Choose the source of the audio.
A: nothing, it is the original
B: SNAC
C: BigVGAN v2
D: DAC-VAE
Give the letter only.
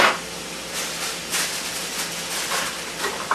A